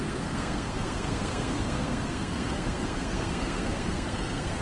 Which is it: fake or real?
fake